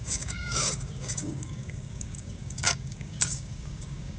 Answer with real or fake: fake